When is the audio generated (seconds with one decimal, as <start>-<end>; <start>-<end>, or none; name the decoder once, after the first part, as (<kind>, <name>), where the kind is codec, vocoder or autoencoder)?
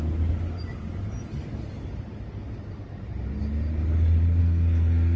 4.4-5.2 (codec, SNAC)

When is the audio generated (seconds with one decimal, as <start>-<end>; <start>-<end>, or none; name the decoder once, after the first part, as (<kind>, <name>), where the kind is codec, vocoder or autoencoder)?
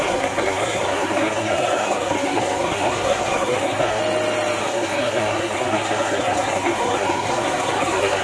0.0-4.0 (codec, SNAC); 4.6-8.2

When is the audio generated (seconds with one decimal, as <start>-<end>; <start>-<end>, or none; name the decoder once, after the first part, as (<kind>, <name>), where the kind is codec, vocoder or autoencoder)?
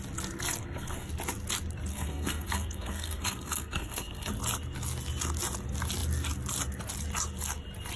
0.6-1.1 (codec, SNAC); 1.9-4.3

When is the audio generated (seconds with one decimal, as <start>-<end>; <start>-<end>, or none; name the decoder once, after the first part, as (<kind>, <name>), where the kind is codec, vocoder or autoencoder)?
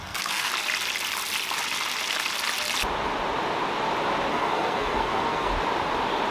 0.0-0.5 (codec, SNAC); 4.3-5.5